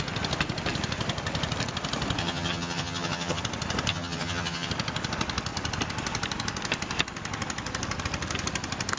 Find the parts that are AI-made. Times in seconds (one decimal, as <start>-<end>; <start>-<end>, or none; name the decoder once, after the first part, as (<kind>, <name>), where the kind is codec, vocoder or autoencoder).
2.2-3.4 (vocoder, HiFi-GAN); 3.9-4.7